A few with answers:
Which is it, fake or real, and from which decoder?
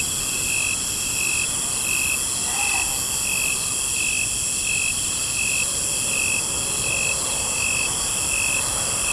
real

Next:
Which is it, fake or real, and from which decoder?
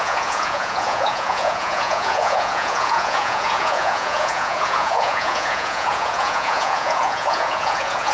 fake, vocoder, Vocos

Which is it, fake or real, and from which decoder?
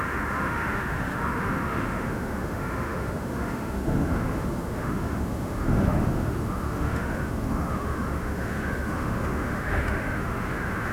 fake, autoencoder, DAC-VAE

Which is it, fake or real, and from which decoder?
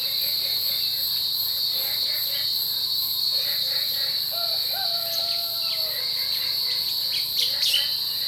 fake, vocoder, BigVGAN v2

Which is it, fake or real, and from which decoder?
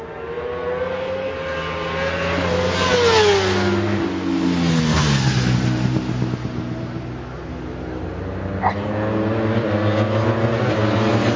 real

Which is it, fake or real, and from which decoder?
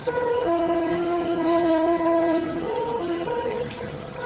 fake, vocoder, HiFi-GAN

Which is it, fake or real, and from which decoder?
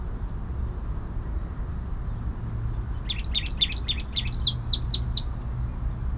real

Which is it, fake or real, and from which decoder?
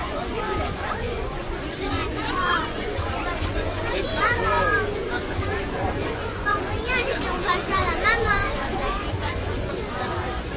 fake, vocoder, Vocos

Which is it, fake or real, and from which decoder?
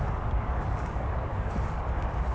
fake, codec, DAC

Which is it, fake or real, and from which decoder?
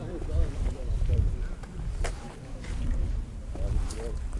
fake, vocoder, BigVGAN v2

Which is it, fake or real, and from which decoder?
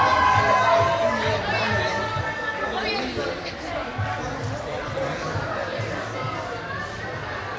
real